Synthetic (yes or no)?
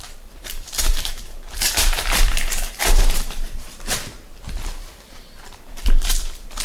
yes